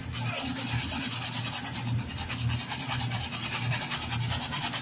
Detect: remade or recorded recorded